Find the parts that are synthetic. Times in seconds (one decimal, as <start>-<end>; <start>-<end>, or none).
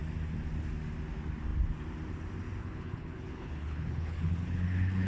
2.6-5.1